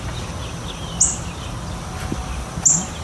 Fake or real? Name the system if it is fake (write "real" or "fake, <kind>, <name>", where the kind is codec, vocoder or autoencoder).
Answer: real